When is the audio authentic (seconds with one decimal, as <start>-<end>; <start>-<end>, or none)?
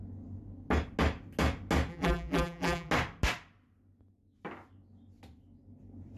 0.0-1.9; 2.9-6.2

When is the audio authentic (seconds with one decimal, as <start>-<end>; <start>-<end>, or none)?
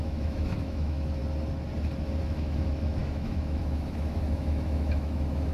1.2-2.2